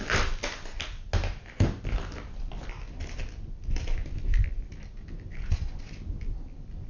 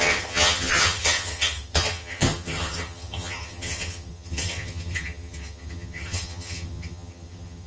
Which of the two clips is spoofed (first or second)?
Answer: second